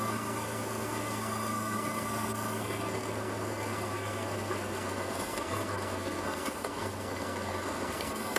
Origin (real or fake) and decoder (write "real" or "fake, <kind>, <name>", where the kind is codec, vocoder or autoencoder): fake, codec, SNAC